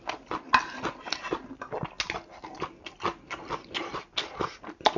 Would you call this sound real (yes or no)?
yes